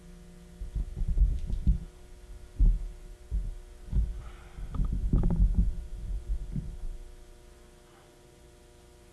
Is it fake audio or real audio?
real